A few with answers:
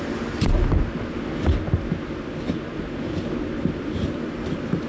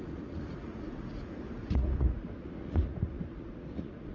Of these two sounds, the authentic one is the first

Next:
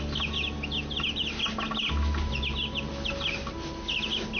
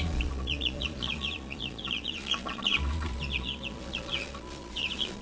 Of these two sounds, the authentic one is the first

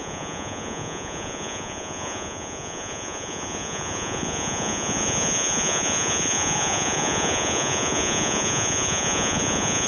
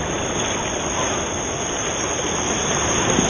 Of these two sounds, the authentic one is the second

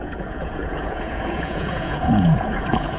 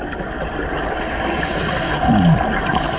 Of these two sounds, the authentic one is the second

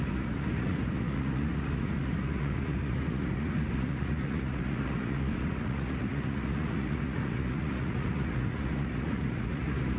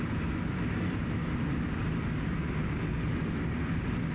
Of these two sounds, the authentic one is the second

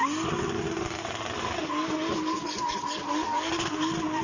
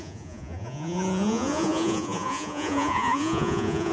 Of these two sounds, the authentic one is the first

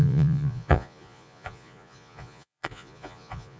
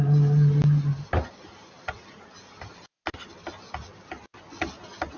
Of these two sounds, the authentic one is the second